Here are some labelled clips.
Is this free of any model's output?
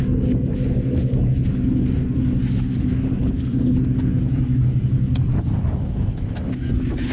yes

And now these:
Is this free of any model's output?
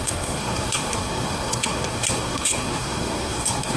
no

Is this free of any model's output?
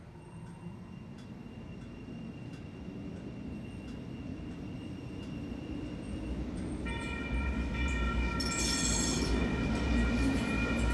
yes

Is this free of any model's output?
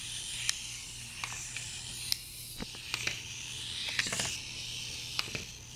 yes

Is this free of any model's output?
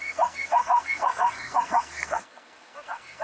no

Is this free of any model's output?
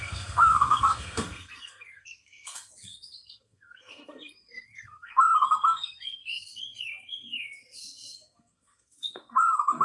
no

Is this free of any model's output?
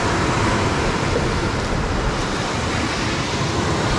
yes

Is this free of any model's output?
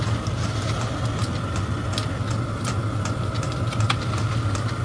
yes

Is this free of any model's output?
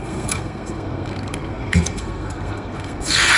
no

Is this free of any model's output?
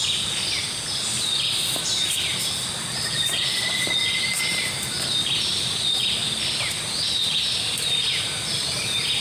yes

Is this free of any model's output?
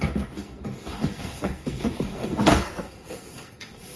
no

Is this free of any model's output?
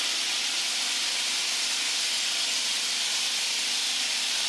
yes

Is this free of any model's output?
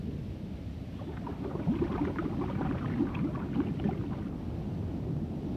yes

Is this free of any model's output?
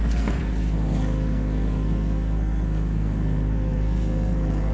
no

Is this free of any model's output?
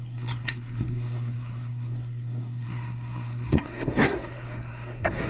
no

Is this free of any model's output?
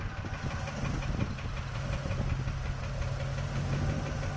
yes